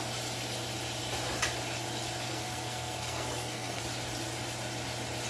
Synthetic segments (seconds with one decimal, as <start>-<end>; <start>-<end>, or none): 2.3-3.8